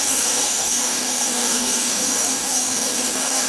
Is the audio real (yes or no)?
no